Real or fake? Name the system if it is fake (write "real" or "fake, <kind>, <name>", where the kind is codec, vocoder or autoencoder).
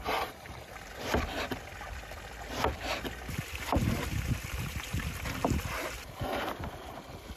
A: real